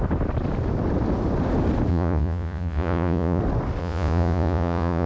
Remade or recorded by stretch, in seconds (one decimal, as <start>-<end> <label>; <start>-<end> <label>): 0.0-1.9 recorded; 1.9-3.4 remade; 3.4-3.8 recorded; 3.8-5.1 remade